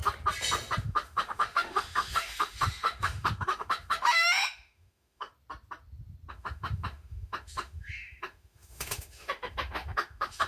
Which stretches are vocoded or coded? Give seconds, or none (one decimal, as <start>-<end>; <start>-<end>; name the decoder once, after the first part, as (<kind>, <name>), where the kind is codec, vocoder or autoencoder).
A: 0.8-5.3 (autoencoder, DAC-VAE); 6.3-10.5